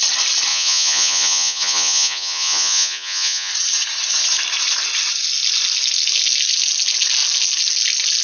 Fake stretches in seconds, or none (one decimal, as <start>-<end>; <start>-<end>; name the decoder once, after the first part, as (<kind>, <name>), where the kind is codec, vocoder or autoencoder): 0.5-3.5 (vocoder, Vocos)